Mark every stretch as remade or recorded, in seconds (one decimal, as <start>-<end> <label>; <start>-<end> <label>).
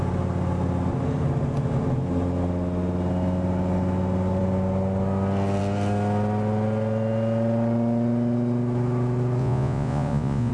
0.0-9.4 recorded; 9.4-10.5 remade